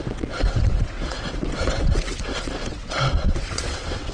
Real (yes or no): no